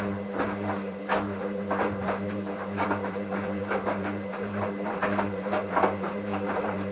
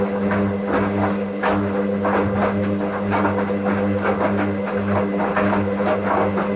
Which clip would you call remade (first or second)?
first